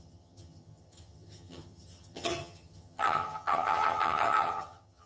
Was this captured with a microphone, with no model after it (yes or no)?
no